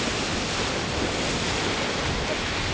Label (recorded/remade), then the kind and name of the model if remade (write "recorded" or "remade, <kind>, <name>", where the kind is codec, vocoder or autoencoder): recorded